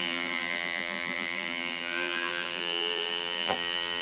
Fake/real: fake